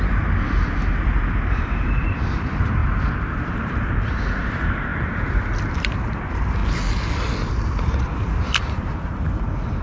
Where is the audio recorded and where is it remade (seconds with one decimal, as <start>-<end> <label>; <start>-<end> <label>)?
0.0-2.8 remade; 2.8-3.5 recorded; 3.5-4.9 remade; 4.9-5.7 recorded; 5.7-6.6 remade; 6.6-8.0 recorded; 8.0-9.8 remade